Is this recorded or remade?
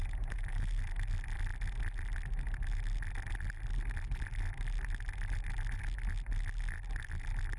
recorded